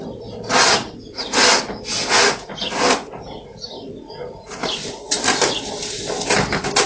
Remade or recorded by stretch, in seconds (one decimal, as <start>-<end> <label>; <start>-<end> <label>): 0.0-6.9 recorded